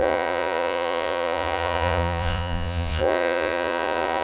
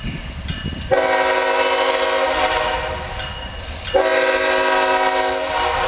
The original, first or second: second